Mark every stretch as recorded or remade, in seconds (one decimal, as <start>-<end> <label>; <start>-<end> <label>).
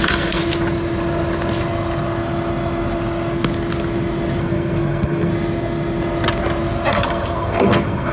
0.0-0.4 remade; 0.4-4.4 recorded; 4.4-5.3 remade; 5.3-6.9 recorded; 6.9-8.1 remade